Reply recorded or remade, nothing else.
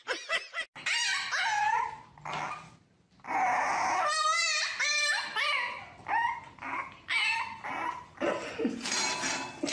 recorded